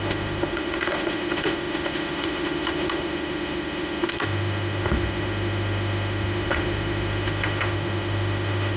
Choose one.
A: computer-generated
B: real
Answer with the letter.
A